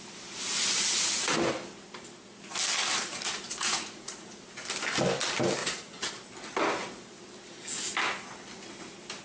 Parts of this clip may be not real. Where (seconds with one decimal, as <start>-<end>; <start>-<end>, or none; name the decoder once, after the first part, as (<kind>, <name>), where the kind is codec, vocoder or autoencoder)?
3.1-4.4 (vocoder, Vocos); 5.6-6.1